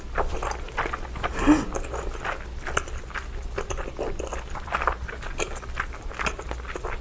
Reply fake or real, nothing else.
real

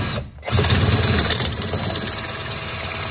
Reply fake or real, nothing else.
real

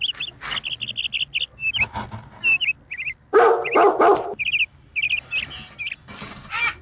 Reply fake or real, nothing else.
real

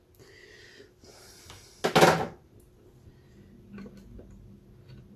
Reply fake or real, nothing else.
real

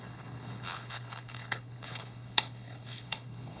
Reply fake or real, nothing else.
fake